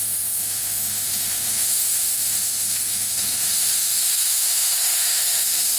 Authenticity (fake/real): fake